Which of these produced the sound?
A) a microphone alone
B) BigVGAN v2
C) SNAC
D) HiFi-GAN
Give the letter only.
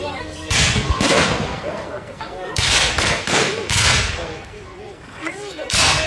C